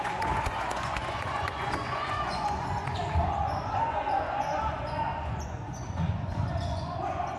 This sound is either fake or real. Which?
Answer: fake